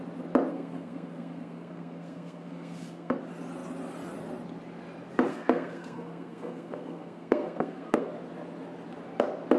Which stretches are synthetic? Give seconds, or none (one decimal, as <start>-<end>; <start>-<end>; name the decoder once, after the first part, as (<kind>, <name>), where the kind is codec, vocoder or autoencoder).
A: 0.5-3.2 (codec, SNAC); 5.3-8.1